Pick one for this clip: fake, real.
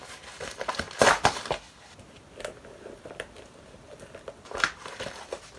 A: real